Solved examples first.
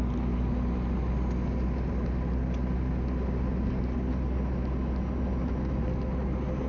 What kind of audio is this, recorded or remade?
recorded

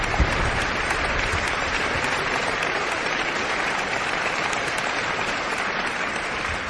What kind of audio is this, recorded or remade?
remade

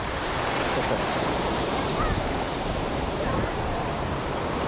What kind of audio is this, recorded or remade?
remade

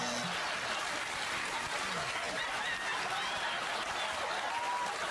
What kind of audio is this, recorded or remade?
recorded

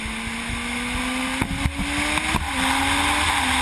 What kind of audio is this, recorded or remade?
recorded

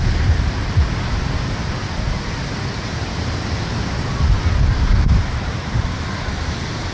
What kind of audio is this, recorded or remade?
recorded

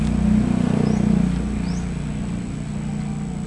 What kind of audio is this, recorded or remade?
recorded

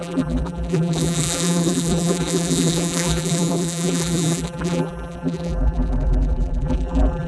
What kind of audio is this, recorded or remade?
remade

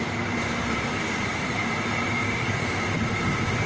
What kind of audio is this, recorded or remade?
remade